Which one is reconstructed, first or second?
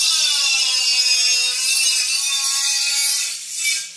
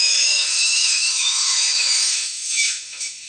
second